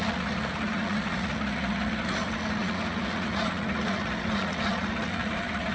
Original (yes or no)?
no